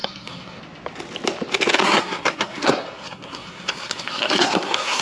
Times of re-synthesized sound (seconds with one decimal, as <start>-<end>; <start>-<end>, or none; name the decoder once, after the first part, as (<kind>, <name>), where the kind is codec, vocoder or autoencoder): 0.0-0.6 (codec, SNAC); 1.8-5.0